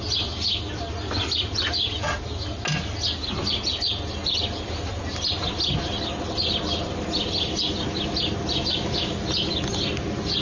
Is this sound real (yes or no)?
yes